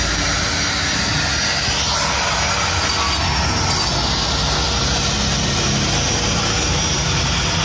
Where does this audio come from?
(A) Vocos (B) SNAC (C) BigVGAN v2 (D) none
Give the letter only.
D